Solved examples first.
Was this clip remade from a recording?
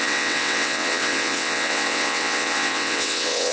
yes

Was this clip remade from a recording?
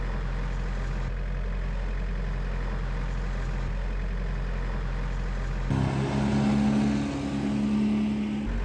no